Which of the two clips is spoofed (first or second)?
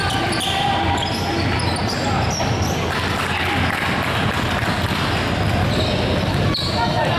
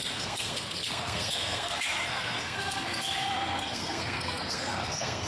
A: second